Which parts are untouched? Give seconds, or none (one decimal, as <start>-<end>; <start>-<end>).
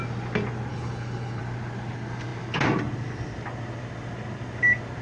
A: 0.0-0.7; 1.4-5.0